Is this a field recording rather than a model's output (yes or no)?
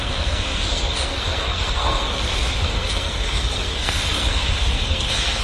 no